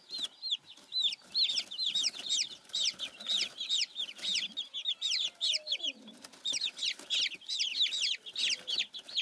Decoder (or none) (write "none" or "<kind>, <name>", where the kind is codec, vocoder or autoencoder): none